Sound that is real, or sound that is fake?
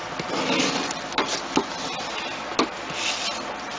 real